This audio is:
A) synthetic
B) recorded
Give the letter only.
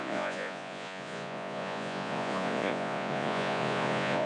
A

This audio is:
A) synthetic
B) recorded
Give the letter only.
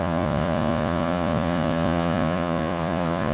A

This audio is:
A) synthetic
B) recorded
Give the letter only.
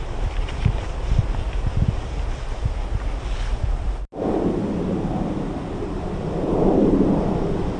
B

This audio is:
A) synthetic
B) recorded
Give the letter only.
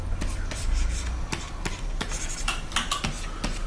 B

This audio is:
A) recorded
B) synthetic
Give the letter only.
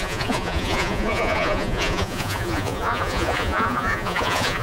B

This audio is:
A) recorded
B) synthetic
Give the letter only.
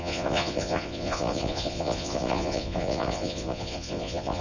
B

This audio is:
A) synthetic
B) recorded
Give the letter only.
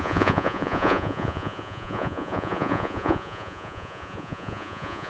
A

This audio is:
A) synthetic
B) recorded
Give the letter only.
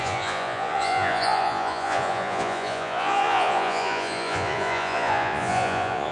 A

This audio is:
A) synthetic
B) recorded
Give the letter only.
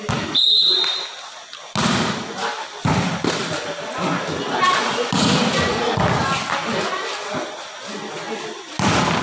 B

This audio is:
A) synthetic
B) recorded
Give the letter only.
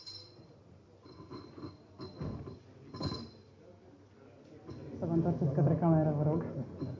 B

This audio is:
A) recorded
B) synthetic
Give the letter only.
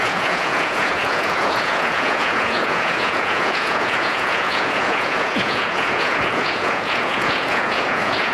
B